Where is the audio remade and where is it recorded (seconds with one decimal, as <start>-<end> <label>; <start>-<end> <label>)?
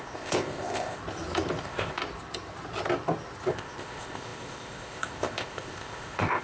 0.0-1.0 remade; 1.0-1.6 recorded; 1.6-2.0 remade; 2.0-3.5 recorded; 3.5-6.4 remade